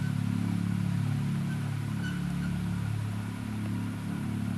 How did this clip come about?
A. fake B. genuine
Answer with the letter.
B